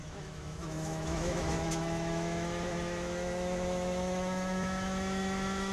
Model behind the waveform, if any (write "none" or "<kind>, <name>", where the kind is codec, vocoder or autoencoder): autoencoder, DAC-VAE